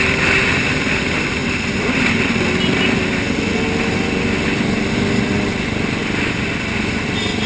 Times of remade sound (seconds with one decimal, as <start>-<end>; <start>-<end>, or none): none